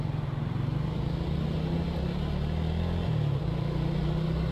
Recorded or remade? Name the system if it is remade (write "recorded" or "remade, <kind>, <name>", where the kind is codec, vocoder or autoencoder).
recorded